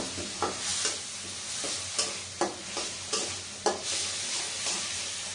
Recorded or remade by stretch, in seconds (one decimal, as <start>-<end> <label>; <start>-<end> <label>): 0.0-5.3 recorded